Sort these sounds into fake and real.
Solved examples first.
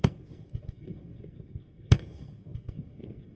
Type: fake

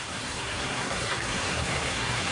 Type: fake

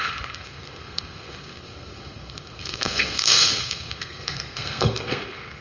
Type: fake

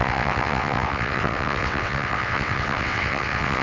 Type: fake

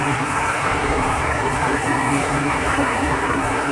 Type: fake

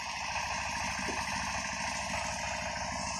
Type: real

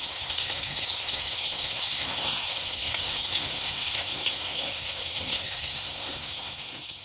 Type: fake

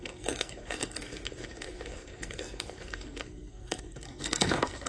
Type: fake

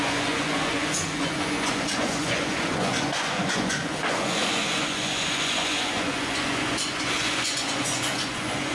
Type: fake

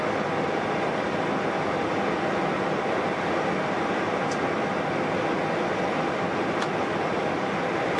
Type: real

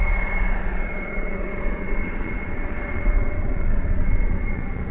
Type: fake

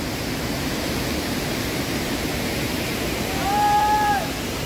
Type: fake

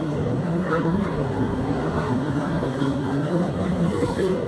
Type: fake